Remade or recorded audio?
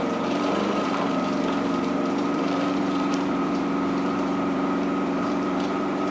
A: remade